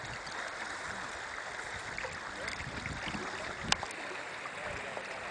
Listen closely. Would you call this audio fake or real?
real